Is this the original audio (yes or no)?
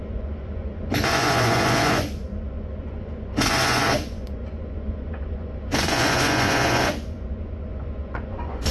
no